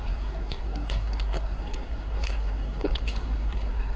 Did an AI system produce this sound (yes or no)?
yes